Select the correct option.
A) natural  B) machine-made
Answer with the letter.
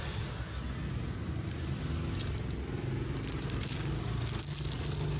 A